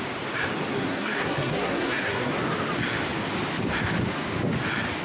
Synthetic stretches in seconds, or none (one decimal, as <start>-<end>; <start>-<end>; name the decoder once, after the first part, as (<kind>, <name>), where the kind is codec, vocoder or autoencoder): 0.7-2.3 (codec, SNAC)